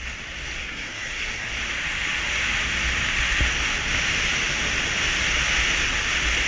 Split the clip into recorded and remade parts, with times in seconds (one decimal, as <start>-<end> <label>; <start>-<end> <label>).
0.0-0.6 recorded; 0.6-1.5 remade; 1.5-6.5 recorded